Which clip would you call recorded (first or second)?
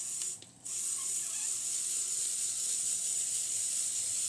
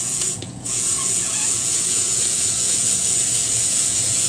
first